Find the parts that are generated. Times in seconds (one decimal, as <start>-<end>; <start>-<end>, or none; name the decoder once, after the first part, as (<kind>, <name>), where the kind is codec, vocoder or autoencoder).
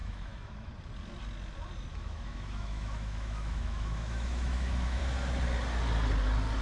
0.0-0.7 (autoencoder, DAC-VAE); 1.9-5.0